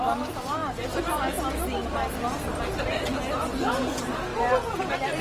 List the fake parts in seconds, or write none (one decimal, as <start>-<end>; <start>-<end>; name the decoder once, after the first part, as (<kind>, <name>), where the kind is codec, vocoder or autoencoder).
0.0-0.6 (vocoder, BigVGAN v2); 2.8-4.3; 4.8-5.2